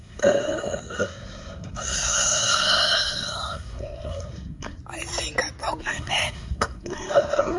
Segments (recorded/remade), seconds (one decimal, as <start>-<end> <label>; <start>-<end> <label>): 0.0-4.8 remade; 4.8-5.8 recorded; 5.8-7.6 remade